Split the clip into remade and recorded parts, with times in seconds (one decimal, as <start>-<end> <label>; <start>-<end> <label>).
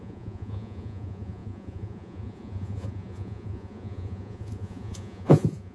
0.0-5.7 remade